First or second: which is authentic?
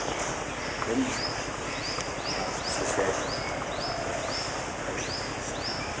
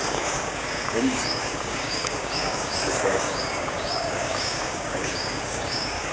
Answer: first